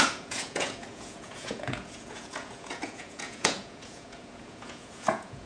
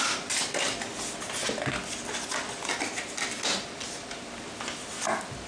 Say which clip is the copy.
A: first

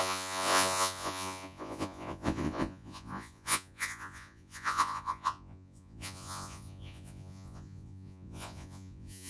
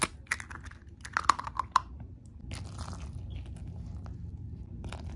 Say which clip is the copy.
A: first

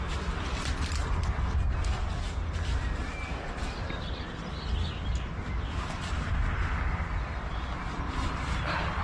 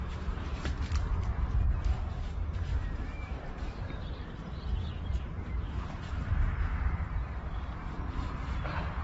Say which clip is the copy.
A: second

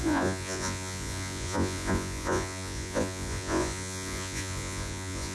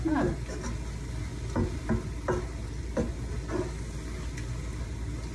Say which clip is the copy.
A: first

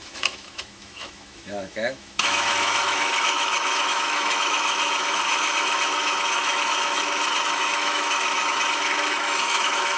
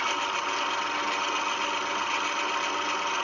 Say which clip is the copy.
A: first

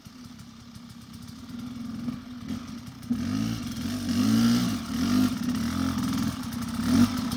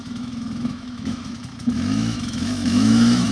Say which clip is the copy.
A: second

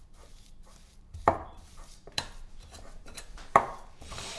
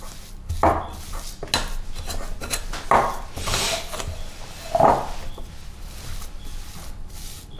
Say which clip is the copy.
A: first